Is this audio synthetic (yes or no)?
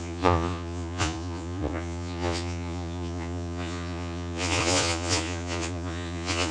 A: yes